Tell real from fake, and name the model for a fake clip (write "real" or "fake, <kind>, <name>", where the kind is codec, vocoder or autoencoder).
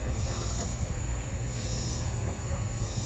fake, codec, SNAC